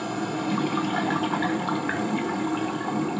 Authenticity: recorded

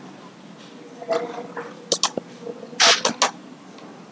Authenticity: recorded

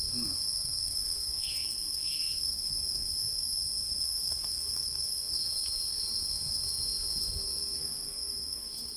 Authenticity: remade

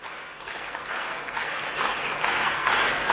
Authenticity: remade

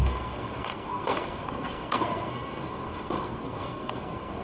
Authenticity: remade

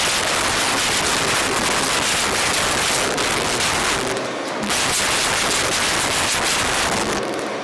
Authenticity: recorded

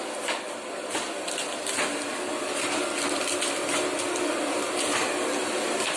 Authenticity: recorded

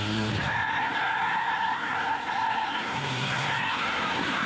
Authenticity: remade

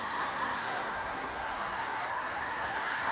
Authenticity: remade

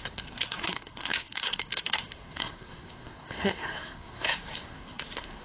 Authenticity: remade